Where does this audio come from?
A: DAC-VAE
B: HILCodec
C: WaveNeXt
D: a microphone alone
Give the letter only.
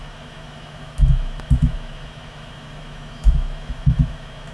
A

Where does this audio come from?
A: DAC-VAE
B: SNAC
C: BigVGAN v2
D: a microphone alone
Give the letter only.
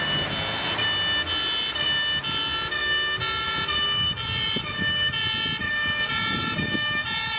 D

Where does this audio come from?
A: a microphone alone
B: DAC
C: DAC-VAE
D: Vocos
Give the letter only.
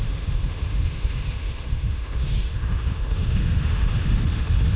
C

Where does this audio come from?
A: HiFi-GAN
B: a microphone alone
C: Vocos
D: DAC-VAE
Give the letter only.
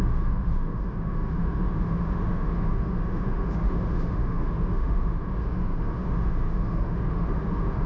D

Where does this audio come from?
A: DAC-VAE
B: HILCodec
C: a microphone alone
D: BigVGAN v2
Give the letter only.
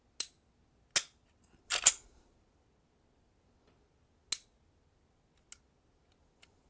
C